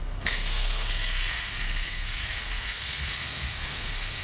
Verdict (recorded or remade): remade